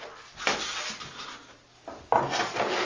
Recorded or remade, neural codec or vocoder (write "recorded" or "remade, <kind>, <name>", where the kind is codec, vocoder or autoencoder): recorded